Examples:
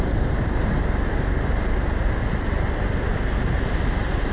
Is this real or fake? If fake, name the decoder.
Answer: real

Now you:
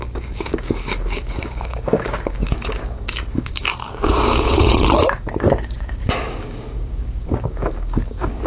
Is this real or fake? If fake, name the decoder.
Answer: fake, codec, DAC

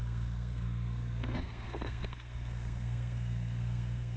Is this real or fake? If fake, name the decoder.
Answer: fake, codec, SNAC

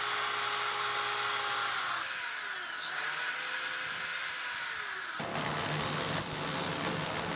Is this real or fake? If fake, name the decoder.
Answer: real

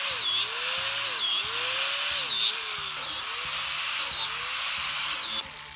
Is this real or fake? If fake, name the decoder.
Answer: real